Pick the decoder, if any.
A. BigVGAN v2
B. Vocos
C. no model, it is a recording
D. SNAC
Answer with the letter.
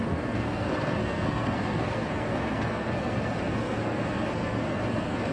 D